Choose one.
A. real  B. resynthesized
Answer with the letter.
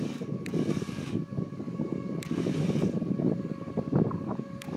B